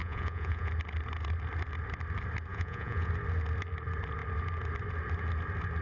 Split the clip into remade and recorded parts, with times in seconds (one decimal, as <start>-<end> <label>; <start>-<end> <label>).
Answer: 0.0-0.7 remade; 0.7-2.5 recorded; 2.5-3.1 remade; 3.1-5.8 recorded